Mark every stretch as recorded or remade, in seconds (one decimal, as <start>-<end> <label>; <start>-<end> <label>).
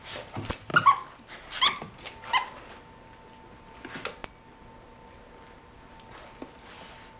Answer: 0.0-7.2 recorded